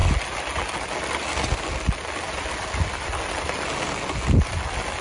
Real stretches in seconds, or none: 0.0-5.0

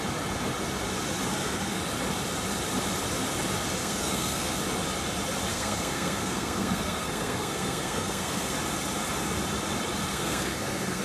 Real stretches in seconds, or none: 0.0-1.3; 1.8-3.8; 4.6-5.5; 8.5-10.1